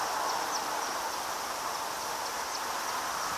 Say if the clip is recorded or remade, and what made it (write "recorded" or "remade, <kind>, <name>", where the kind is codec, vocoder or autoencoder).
recorded